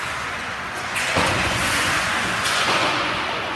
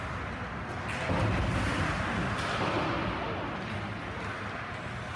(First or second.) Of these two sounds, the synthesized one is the first